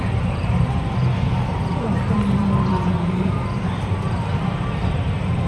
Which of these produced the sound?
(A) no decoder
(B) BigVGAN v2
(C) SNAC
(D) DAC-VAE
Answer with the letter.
B